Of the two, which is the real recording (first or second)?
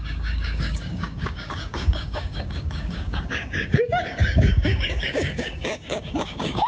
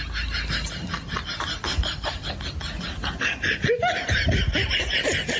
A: second